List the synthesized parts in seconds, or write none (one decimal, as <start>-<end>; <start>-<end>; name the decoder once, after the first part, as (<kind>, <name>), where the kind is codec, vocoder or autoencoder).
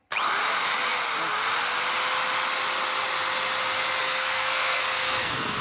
4.0-5.6 (codec, SNAC)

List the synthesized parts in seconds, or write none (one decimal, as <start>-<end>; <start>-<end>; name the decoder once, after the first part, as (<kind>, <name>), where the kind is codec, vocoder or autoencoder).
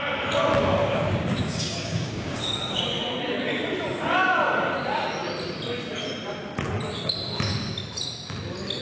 0.8-2.8 (codec, DAC)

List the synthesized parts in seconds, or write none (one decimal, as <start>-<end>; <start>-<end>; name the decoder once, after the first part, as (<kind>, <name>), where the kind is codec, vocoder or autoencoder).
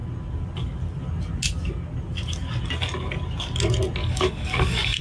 4.0-5.0 (codec, DAC)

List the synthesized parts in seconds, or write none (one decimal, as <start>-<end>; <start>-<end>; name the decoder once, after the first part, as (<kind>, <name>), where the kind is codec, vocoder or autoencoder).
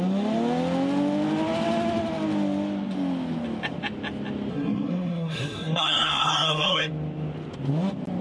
4.5-6.9 (codec, SNAC)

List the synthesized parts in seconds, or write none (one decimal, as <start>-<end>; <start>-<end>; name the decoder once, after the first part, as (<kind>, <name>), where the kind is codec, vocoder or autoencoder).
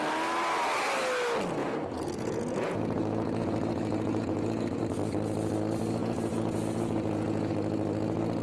1.6-4.8 (vocoder, Vocos); 6.0-7.5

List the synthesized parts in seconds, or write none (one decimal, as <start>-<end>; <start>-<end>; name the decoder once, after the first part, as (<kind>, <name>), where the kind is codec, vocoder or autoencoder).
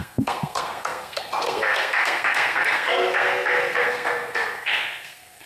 0.0-5.5 (codec, SNAC)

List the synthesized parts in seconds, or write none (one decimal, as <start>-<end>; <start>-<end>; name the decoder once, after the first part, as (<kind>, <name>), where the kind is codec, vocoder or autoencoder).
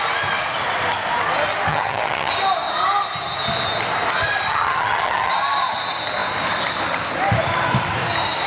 1.7-2.3 (vocoder, HiFi-GAN); 4.5-5.3